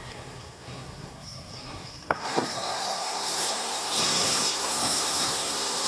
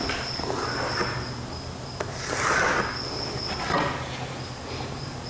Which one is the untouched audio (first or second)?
second